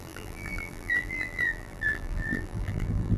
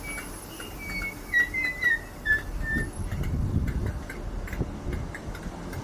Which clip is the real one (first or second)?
second